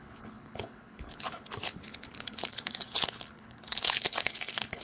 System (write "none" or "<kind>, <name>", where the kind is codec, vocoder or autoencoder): codec, HILCodec